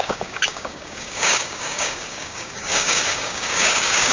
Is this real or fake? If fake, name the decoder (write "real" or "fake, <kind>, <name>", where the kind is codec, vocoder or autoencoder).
fake, codec, DAC